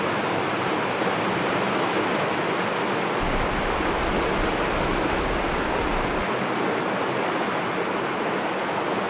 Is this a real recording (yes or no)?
yes